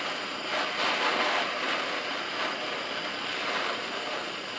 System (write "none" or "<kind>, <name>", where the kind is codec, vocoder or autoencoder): vocoder, BigVGAN v2